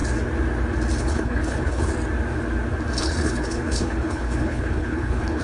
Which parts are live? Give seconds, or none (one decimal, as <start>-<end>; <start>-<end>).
0.0-1.0; 1.9-3.0